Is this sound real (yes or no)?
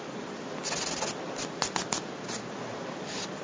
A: yes